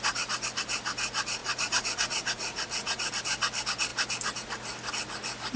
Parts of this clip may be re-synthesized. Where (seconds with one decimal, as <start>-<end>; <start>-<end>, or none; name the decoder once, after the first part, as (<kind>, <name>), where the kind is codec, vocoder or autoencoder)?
1.4-3.1 (vocoder, Vocos)